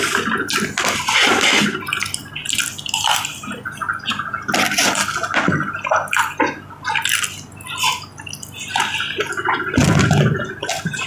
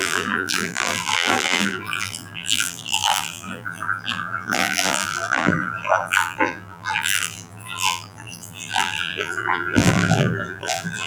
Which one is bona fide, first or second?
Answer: first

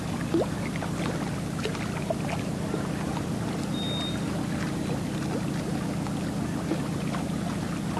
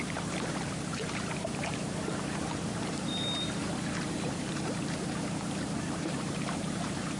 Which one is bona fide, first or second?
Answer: first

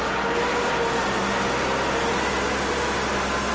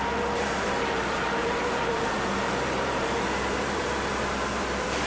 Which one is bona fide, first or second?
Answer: first